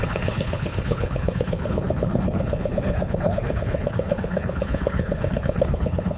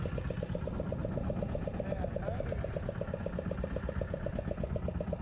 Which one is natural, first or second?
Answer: second